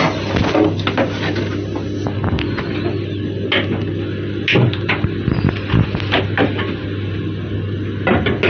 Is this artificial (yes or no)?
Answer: no